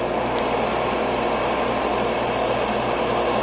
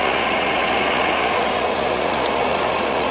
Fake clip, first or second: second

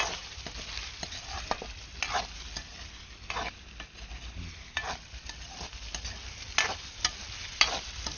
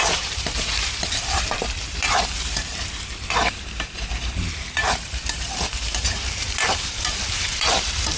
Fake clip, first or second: second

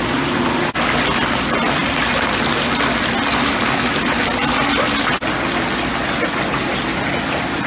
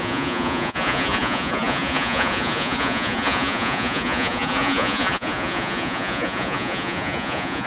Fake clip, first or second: second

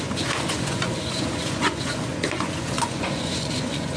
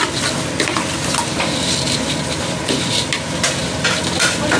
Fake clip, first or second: first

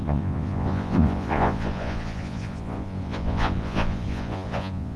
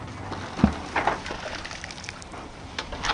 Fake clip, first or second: first